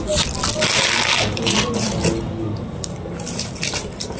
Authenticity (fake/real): real